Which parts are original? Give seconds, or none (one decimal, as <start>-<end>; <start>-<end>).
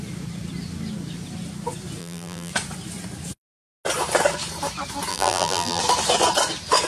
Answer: 0.0-2.0; 2.5-5.1; 5.8-6.9